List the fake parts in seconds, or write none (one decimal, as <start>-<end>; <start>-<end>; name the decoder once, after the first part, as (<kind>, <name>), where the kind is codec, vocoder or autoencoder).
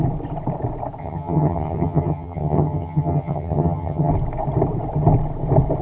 1.0-4.1 (vocoder, HiFi-GAN)